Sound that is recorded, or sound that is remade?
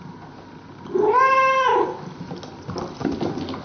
recorded